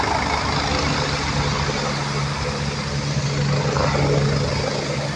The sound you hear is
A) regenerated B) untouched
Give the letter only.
B